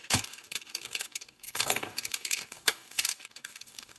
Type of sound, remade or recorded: remade